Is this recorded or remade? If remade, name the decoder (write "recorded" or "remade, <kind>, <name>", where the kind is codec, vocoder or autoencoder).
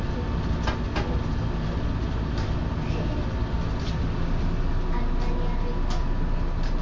recorded